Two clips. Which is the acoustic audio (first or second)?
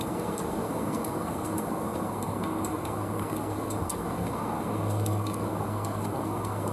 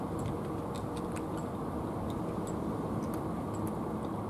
second